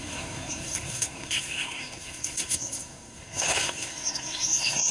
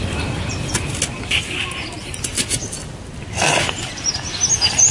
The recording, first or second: second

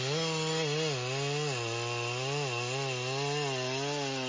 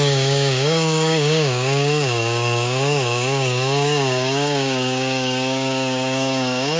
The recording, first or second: first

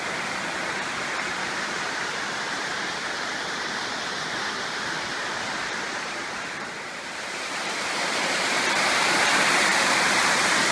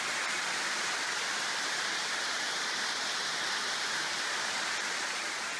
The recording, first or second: second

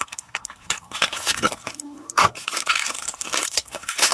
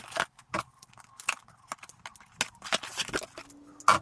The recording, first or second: second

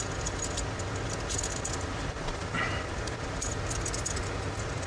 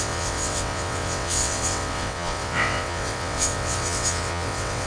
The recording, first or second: first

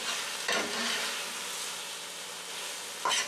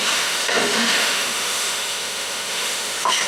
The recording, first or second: first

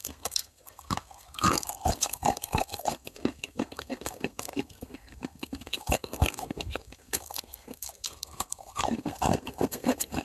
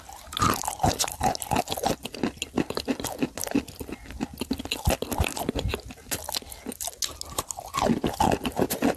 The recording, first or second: second